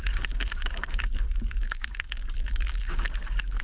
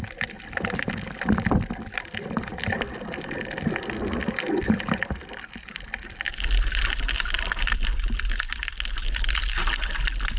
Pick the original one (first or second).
second